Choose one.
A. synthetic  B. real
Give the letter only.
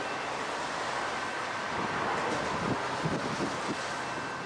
B